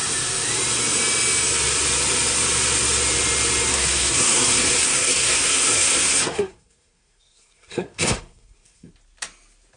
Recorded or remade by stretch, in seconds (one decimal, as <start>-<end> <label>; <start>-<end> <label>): 0.0-3.7 recorded; 3.7-8.9 remade; 8.9-9.8 recorded